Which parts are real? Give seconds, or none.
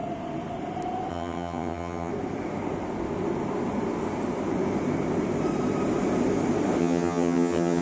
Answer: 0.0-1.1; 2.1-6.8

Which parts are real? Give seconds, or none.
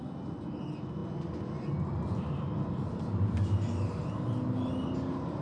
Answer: 0.0-5.4